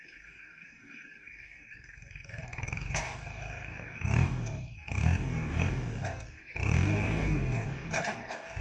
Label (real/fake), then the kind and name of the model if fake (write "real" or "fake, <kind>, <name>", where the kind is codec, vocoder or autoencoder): fake, codec, DAC